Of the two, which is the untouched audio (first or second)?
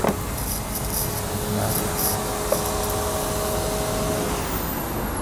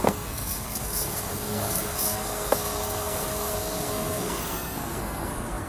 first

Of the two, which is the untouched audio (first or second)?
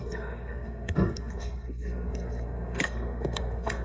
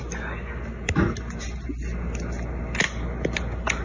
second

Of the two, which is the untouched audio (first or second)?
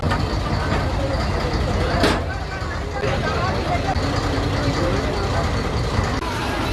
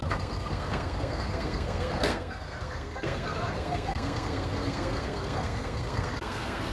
first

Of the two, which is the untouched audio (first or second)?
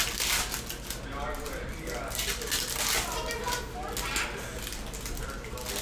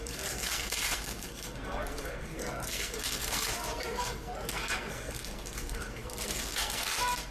first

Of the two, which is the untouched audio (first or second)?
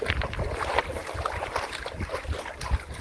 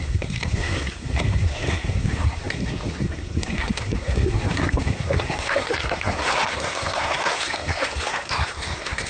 first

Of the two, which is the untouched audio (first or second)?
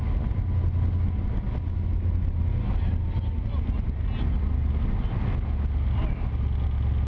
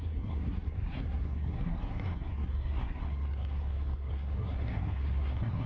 first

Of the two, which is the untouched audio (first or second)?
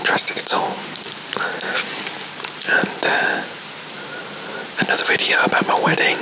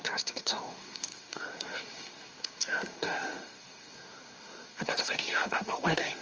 first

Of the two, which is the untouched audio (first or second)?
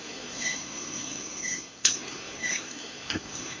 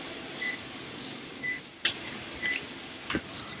second